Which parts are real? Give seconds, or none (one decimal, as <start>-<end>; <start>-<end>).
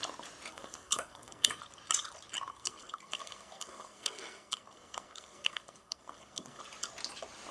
0.0-0.5; 1.6-2.5; 6.6-7.5